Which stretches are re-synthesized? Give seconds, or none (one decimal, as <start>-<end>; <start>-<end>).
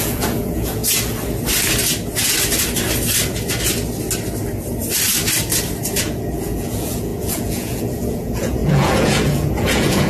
0.0-0.8; 6.0-10.1